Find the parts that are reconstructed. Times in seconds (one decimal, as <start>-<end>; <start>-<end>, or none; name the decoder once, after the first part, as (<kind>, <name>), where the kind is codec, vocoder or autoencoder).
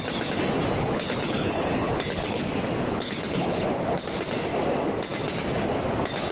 0.8-2.4 (codec, HILCodec); 2.9-4.0